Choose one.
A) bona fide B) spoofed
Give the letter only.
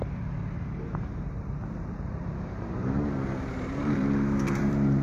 B